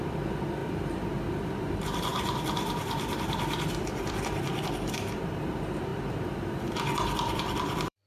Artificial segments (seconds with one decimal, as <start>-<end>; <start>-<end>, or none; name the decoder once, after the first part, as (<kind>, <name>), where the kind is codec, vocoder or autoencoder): 0.0-8.1 (vocoder, BigVGAN v2)